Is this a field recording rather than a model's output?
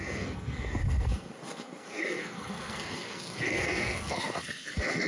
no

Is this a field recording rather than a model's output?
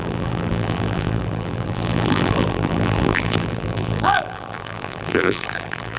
no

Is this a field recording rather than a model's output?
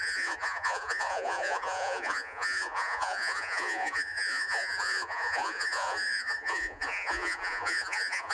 no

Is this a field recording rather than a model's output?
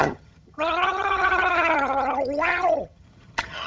no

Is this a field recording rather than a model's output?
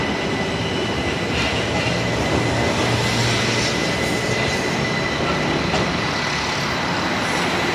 yes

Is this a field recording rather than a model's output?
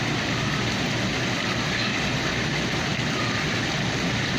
yes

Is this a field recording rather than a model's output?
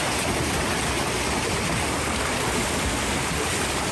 yes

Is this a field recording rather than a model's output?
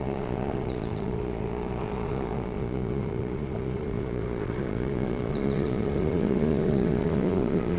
no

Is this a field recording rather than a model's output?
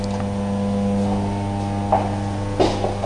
yes